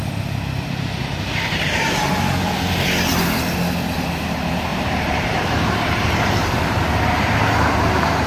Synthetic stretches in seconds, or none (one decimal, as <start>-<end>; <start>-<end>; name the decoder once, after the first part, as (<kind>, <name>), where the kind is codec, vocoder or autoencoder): 1.0-2.1 (vocoder, BigVGAN v2); 4.7-6.8